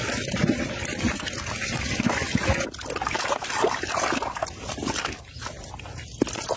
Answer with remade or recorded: recorded